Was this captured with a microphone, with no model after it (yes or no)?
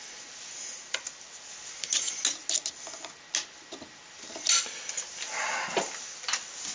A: yes